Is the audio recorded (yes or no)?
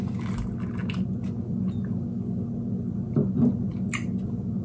yes